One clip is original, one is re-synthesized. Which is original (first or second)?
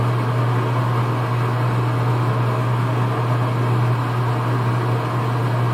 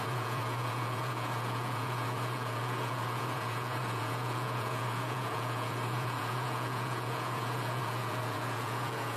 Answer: first